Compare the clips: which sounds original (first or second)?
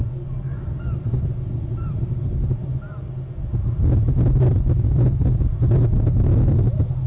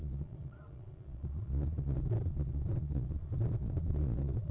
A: first